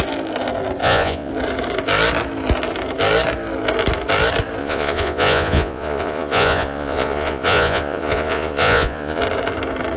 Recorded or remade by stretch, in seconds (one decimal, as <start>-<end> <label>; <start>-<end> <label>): 0.0-0.8 recorded; 0.8-1.3 remade; 1.3-4.6 recorded; 4.6-9.2 remade; 9.2-10.0 recorded